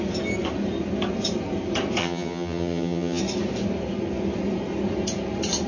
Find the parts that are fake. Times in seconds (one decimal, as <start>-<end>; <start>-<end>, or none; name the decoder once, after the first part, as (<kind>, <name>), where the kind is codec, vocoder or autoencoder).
2.0-3.2 (vocoder, HiFi-GAN)